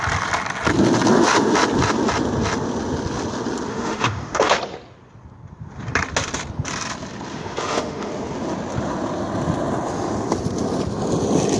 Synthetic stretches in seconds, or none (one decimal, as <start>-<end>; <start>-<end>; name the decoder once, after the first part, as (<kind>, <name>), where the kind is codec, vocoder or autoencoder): 3.7-4.6 (autoencoder, DAC-VAE); 7.3-8.1